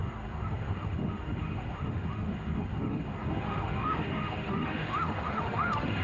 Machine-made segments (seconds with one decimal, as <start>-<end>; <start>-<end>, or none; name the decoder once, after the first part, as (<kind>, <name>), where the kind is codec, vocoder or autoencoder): 0.0-6.0 (autoencoder, DAC-VAE)